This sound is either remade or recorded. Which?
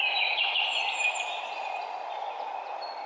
recorded